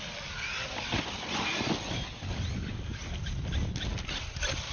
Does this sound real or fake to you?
real